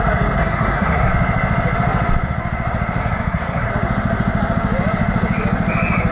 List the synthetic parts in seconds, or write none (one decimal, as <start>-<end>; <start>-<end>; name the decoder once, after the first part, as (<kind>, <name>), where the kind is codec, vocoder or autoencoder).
0.4-1.1 (codec, SNAC); 3.0-3.7